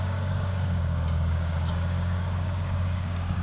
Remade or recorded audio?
remade